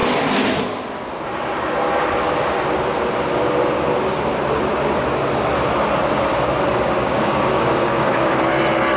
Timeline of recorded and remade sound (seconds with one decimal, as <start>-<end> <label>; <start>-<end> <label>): 0.0-7.0 recorded; 7.0-8.4 remade; 8.4-9.0 recorded